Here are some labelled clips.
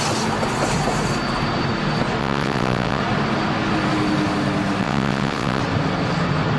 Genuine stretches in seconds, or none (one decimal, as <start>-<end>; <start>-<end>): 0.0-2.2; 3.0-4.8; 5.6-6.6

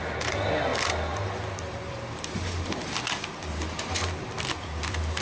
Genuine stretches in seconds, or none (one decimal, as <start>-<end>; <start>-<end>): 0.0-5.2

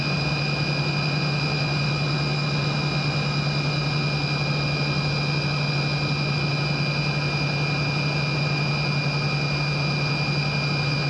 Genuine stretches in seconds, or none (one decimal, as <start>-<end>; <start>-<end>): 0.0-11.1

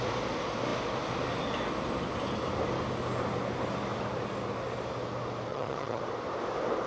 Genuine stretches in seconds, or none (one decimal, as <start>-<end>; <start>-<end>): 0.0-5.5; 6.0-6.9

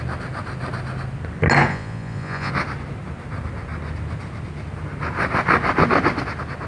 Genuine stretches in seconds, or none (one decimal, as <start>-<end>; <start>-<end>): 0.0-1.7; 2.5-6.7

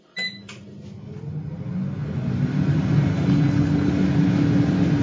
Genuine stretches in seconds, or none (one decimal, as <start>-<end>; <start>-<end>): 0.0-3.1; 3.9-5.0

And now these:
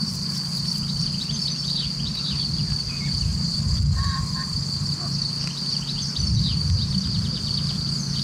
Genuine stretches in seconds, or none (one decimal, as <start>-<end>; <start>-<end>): 0.0-8.2

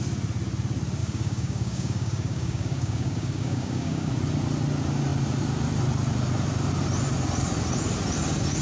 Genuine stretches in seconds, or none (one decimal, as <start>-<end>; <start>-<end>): 0.0-1.0; 4.1-8.6